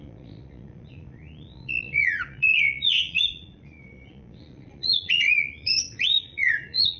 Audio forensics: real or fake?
fake